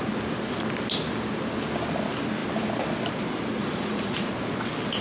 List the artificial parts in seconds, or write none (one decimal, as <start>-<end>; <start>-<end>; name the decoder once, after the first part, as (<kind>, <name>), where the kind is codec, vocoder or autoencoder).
3.6-4.3 (vocoder, Vocos)